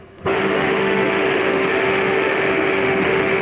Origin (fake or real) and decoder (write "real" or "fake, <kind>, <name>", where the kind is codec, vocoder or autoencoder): fake, autoencoder, DAC-VAE